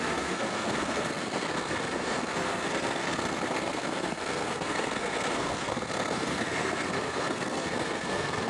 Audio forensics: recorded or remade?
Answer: remade